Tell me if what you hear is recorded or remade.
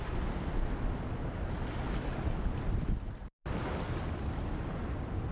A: recorded